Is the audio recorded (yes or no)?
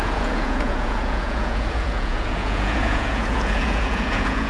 no